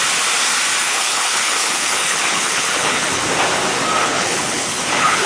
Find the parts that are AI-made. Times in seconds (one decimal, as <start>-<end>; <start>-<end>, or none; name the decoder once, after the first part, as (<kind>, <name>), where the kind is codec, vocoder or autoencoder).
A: 0.8-3.2 (codec, HILCodec); 4.0-5.3